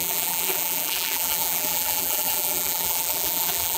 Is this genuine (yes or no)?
no